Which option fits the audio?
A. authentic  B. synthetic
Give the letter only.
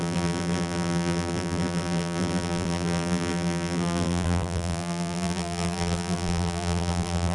B